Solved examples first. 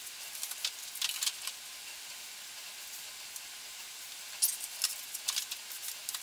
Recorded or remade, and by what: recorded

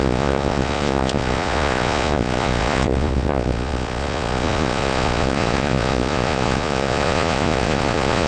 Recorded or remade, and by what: remade, vocoder, Vocos